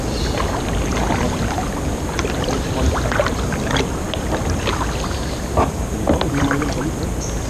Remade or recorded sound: recorded